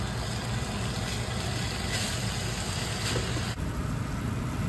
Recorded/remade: recorded